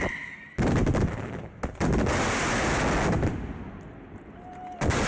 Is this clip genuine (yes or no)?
yes